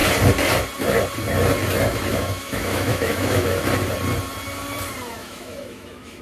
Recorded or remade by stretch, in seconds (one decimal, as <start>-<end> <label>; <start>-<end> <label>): 0.0-2.1 recorded; 2.1-3.6 remade; 3.6-5.2 recorded; 5.2-6.2 remade